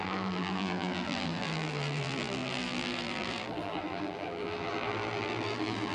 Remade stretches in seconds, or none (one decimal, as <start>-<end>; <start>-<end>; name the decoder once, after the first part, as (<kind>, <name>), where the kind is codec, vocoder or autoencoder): 0.0-5.9 (vocoder, BigVGAN v2)

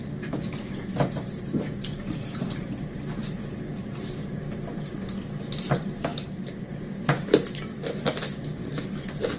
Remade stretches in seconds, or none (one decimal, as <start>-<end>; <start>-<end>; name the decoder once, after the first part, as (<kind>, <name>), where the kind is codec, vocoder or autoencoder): 0.0-4.4 (vocoder, BigVGAN v2); 5.4-9.4